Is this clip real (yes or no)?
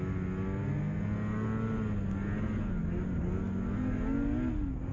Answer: yes